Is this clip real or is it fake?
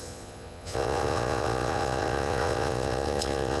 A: fake